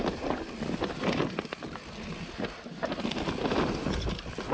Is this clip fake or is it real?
real